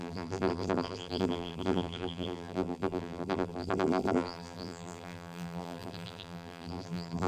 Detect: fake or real fake